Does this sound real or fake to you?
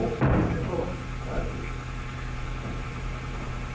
real